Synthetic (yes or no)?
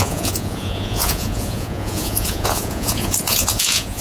yes